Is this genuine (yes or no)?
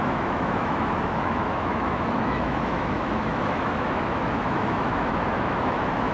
no